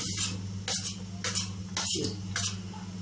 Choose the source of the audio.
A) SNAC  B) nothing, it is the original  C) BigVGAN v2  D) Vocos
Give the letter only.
B